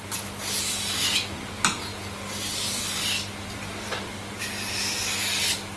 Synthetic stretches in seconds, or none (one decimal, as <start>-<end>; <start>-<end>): 1.9-2.4